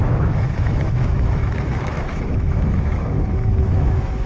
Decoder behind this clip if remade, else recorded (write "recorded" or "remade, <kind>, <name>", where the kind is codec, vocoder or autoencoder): remade, autoencoder, DAC-VAE